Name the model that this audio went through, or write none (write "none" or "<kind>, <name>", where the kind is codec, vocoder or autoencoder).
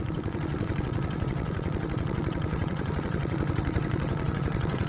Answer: vocoder, WaveNeXt